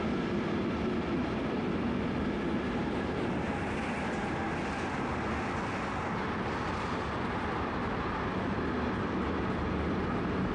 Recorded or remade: recorded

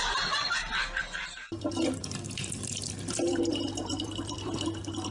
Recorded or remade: remade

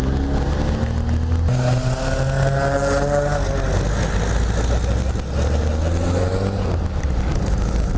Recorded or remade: recorded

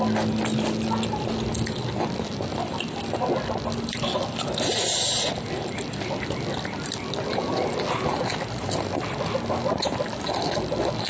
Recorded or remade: recorded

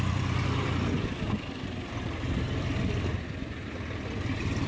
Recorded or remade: remade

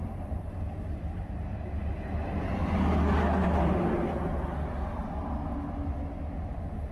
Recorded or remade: recorded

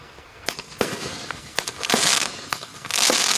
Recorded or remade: remade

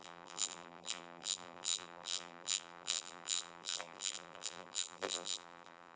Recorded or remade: remade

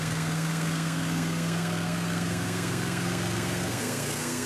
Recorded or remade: remade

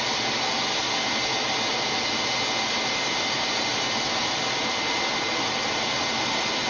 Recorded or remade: recorded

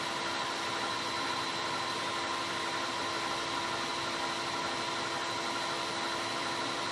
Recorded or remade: recorded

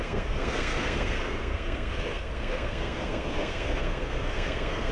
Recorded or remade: remade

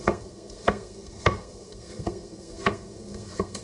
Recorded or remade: remade